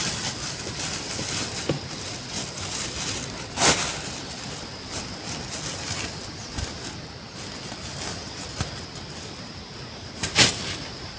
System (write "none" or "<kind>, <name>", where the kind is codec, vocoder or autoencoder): none